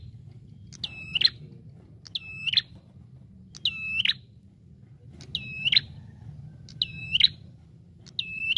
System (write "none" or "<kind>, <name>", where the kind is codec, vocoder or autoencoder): none